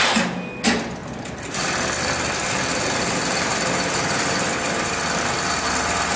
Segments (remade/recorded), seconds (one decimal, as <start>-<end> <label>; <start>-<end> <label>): 0.0-1.0 recorded; 1.0-3.7 remade; 3.7-6.2 recorded